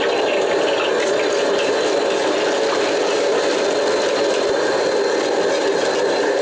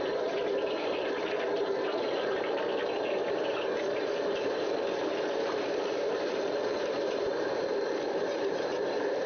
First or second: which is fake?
second